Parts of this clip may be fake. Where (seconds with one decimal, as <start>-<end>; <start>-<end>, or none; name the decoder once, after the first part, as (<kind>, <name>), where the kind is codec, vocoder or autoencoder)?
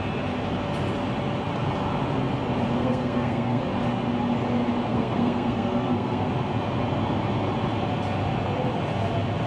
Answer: 2.8-3.6 (codec, SNAC); 4.9-6.3